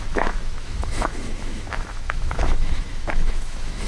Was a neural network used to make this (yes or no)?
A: yes